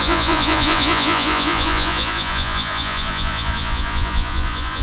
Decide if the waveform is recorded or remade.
remade